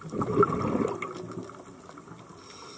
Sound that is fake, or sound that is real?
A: real